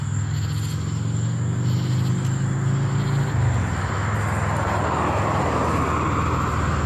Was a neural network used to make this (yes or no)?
no